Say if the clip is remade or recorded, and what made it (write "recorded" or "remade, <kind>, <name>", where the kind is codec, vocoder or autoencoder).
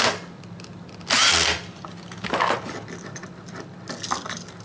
recorded